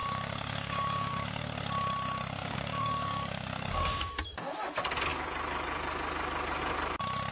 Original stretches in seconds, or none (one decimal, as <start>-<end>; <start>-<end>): 1.4-2.4; 4.1-7.3